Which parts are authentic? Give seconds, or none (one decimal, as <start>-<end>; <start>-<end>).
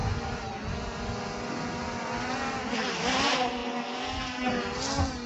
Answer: 0.0-5.3